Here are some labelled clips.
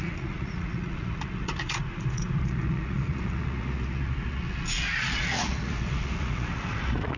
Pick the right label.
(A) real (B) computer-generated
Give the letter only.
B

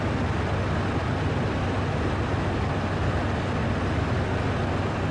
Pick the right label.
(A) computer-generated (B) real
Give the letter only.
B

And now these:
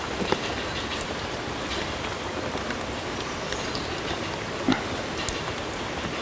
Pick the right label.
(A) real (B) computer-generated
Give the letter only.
A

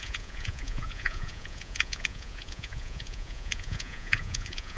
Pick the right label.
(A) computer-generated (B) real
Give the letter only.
A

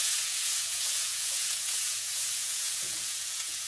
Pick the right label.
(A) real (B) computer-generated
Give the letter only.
B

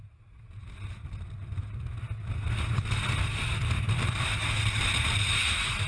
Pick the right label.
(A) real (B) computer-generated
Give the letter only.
A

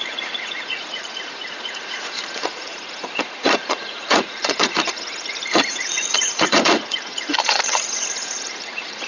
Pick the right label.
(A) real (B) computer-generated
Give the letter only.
B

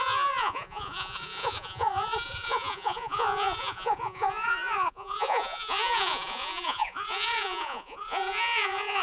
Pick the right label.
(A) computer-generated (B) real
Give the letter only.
A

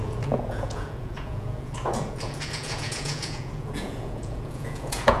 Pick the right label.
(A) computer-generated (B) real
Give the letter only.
A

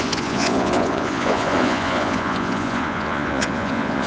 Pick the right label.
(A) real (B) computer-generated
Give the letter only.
B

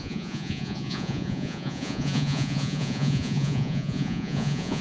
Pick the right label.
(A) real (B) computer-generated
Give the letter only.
B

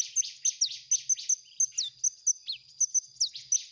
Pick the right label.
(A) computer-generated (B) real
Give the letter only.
B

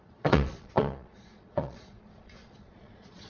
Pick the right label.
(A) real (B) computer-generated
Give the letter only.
B